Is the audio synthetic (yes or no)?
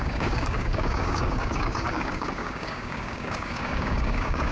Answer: yes